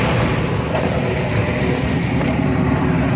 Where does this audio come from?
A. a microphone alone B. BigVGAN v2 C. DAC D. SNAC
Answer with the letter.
A